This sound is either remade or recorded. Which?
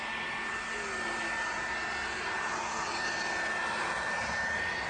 recorded